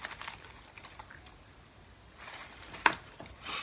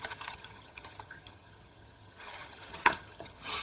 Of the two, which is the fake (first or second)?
second